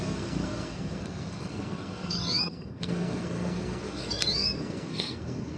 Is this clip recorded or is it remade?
remade